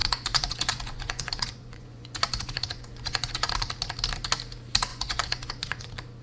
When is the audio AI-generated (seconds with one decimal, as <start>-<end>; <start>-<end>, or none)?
0.0-3.5; 4.9-5.8